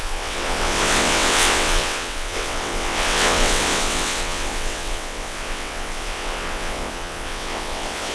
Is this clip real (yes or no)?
no